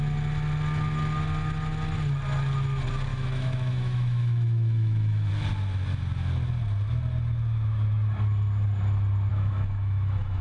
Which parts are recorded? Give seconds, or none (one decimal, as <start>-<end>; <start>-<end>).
0.0-3.1; 5.3-9.3